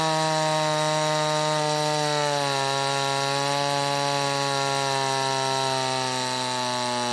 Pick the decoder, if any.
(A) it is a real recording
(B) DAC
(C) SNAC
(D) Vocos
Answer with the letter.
A